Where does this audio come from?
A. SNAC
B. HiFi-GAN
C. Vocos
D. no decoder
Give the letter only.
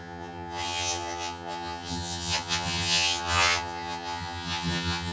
B